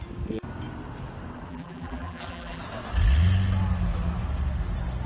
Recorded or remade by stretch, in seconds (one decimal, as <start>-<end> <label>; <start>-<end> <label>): 0.0-1.5 recorded; 1.5-2.6 remade; 2.6-5.1 recorded